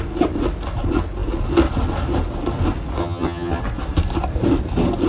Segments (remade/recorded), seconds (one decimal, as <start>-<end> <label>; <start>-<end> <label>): 0.0-3.0 recorded; 3.0-3.6 remade; 3.6-5.1 recorded